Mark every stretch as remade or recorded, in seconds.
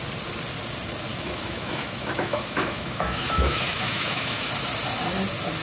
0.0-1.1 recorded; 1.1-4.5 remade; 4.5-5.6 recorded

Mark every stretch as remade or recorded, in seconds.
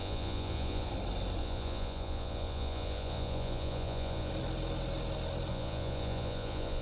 0.0-0.9 remade; 0.9-1.4 recorded; 1.4-4.3 remade; 4.3-5.5 recorded; 5.5-6.8 remade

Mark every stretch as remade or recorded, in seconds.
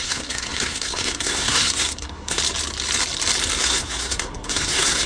0.0-2.4 remade; 2.4-3.6 recorded; 3.6-5.1 remade